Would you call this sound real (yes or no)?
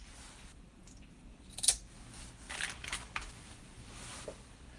yes